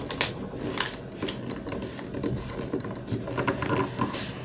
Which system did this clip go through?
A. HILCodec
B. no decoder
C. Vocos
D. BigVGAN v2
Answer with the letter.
B